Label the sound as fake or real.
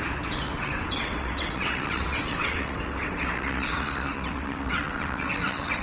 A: fake